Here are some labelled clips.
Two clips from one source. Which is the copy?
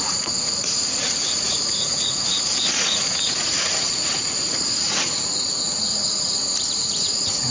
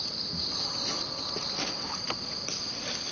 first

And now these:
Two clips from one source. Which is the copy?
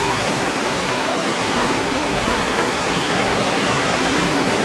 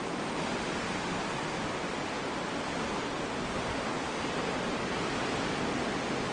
first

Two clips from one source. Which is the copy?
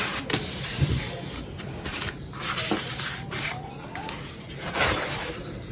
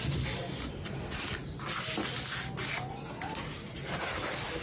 first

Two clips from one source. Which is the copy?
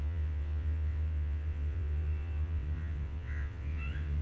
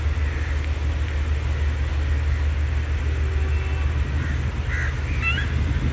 first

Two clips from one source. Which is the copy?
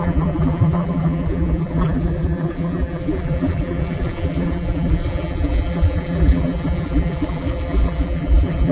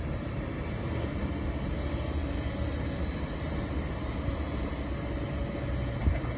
first